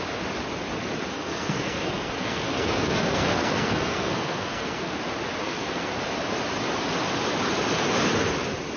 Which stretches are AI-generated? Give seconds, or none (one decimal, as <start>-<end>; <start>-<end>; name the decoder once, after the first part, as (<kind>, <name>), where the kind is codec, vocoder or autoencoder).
1.1-5.0 (codec, SNAC); 5.4-5.9